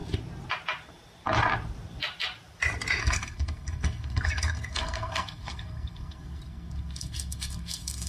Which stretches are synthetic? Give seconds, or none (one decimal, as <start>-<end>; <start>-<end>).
3.0-8.1